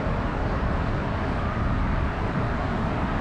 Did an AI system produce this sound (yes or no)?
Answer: yes